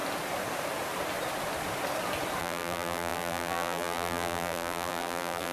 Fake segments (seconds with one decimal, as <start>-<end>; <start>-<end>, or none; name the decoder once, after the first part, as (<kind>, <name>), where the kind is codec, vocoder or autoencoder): 2.4-5.5 (vocoder, BigVGAN v2)